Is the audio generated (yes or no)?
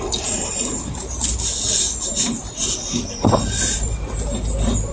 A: no